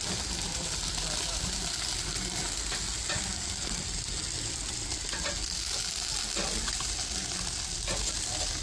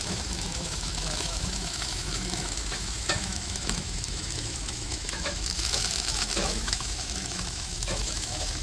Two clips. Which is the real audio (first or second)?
first